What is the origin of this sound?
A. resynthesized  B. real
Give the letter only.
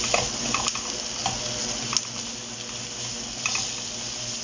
B